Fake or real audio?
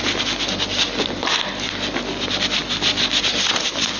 real